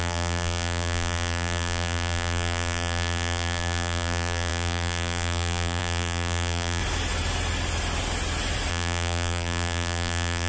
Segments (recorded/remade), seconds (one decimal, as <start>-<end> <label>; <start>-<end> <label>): 0.0-6.8 remade; 6.8-8.7 recorded; 8.7-10.5 remade